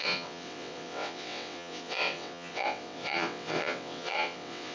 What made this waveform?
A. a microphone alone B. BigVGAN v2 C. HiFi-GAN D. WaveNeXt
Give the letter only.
D